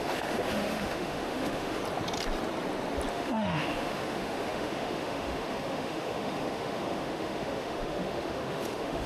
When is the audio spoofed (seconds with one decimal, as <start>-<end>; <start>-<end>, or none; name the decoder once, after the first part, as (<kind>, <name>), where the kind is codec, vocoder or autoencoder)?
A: 0.0-1.8 (autoencoder, DAC-VAE); 3.1-9.1